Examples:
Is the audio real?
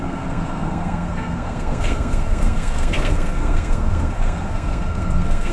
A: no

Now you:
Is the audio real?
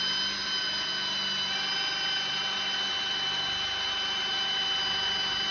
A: yes